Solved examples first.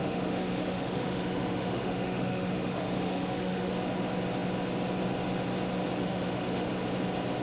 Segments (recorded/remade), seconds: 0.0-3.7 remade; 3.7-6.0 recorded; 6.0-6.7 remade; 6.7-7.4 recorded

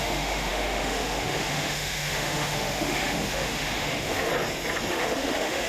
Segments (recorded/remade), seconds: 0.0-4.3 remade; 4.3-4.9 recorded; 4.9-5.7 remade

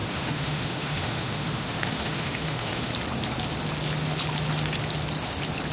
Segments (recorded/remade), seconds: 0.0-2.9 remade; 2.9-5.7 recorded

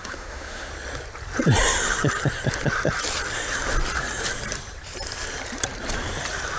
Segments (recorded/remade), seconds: 0.0-0.7 remade; 0.7-6.6 recorded